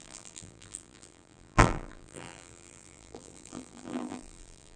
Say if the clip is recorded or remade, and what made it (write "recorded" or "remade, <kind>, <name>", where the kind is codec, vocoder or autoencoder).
remade, vocoder, BigVGAN v2